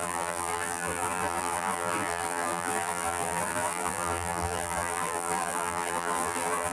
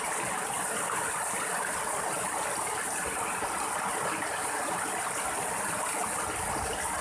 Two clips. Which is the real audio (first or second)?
second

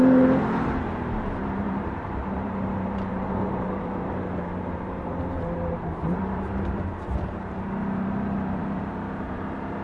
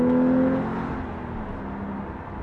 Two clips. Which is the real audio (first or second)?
second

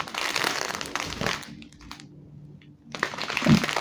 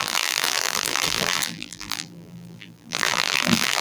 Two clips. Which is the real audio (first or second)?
first